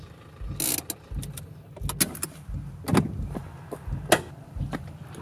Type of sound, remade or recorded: recorded